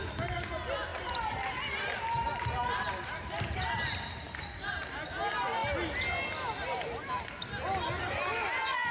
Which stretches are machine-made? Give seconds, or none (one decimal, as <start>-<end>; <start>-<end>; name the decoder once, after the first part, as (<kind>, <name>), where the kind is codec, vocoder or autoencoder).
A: 0.9-4.9 (vocoder, BigVGAN v2)